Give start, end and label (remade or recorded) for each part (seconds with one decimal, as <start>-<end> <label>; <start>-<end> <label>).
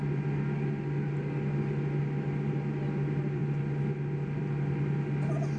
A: 0.0-5.6 recorded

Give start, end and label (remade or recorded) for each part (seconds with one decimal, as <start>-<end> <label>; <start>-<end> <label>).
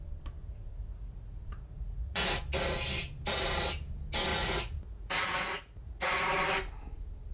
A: 0.0-0.4 recorded; 0.4-2.4 remade; 2.4-4.3 recorded; 4.3-6.1 remade; 6.1-7.3 recorded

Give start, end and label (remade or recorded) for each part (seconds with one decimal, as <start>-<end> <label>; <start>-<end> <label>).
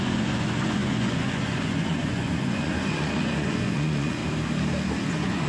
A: 0.0-4.2 remade; 4.2-5.1 recorded; 5.1-5.5 remade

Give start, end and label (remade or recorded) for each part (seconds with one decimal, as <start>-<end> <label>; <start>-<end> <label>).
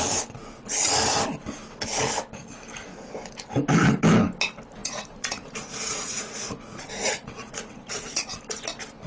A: 0.0-4.8 recorded; 4.8-8.3 remade; 8.3-9.1 recorded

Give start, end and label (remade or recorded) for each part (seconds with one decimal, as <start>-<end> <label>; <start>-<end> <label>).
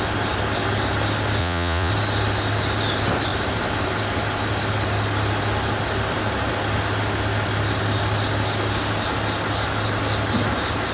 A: 0.0-1.4 recorded; 1.4-1.9 remade; 1.9-10.9 recorded